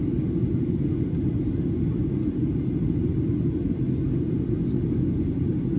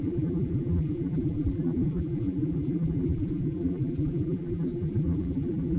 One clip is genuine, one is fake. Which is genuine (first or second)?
first